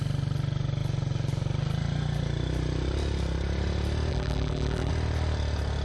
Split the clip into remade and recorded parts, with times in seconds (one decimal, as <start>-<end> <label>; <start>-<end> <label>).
0.0-4.1 recorded; 4.1-4.9 remade; 4.9-5.8 recorded